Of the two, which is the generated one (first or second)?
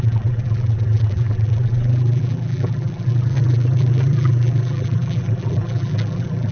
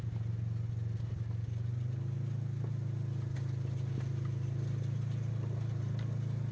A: first